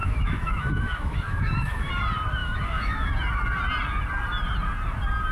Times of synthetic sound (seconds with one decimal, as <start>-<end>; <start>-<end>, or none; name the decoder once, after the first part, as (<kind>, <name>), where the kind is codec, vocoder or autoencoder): 0.0-1.9 (autoencoder, DAC-VAE); 2.4-3.1